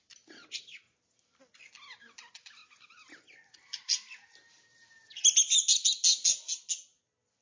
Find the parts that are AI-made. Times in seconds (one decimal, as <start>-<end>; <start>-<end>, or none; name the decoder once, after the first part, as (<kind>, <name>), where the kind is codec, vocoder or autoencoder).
none